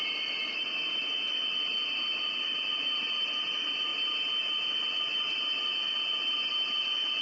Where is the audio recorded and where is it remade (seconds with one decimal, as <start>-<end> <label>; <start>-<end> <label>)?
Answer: 0.0-7.2 recorded